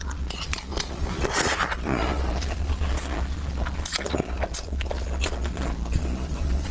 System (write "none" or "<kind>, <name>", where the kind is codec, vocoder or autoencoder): vocoder, Vocos